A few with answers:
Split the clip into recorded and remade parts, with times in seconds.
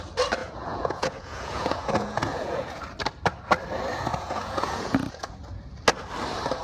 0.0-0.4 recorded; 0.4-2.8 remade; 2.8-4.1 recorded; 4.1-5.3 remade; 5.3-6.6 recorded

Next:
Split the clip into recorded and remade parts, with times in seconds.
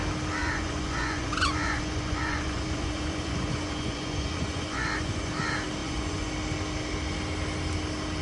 0.0-0.4 recorded; 0.4-5.3 remade; 5.3-5.8 recorded; 5.8-6.3 remade; 6.3-8.2 recorded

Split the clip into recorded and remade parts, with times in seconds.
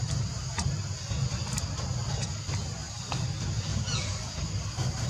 0.0-3.7 recorded; 3.7-4.4 remade; 4.4-5.1 recorded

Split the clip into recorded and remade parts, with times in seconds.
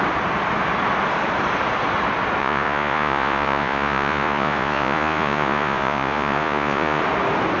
0.0-2.4 recorded; 2.4-7.0 remade; 7.0-7.6 recorded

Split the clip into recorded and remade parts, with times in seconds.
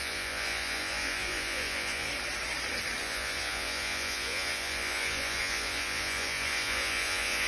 0.0-2.1 remade; 2.1-3.0 recorded; 3.0-7.5 remade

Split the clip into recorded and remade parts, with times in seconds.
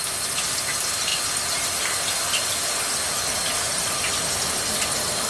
0.0-5.3 recorded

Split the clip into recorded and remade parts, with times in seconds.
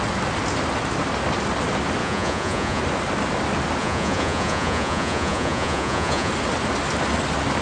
0.0-2.0 recorded; 2.0-2.8 remade; 2.8-3.8 recorded; 3.8-6.3 remade; 6.3-7.6 recorded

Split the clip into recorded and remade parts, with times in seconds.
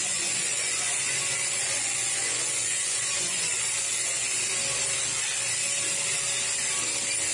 0.0-4.4 remade; 4.4-7.3 recorded